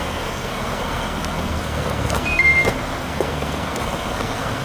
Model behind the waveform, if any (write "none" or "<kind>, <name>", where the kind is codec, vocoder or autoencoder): codec, SNAC